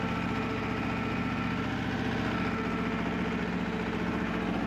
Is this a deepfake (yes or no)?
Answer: no